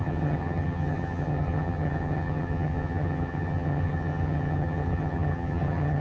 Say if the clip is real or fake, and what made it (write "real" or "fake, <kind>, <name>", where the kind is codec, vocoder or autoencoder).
fake, vocoder, HiFi-GAN